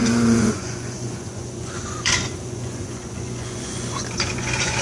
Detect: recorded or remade remade